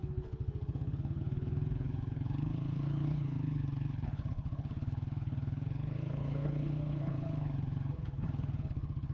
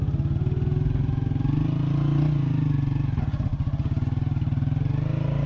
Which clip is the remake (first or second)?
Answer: first